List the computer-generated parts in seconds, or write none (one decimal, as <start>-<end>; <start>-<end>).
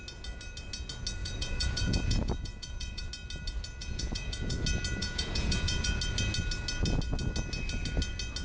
1.2-3.1; 3.8-4.6; 5.0-6.0